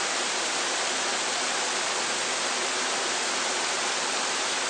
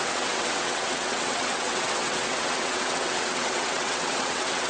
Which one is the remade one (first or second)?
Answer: second